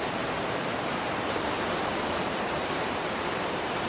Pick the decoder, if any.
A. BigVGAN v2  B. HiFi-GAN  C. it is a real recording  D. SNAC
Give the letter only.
A